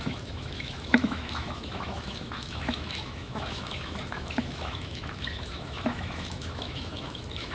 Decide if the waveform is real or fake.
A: fake